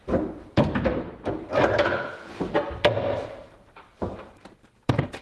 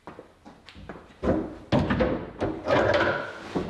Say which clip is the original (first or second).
second